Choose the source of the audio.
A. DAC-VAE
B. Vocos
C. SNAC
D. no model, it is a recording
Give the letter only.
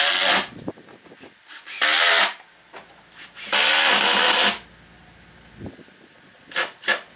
D